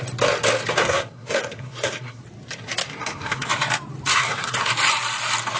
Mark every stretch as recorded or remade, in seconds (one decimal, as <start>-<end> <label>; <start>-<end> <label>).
0.0-0.8 recorded; 0.8-2.2 remade; 2.2-2.9 recorded; 2.9-3.5 remade; 3.5-4.1 recorded; 4.1-4.7 remade; 4.7-5.6 recorded